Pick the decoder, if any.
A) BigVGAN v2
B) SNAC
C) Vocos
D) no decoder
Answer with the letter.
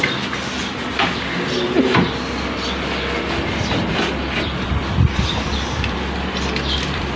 A